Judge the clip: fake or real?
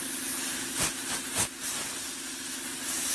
real